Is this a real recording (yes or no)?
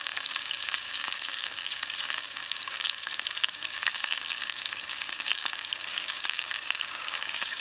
no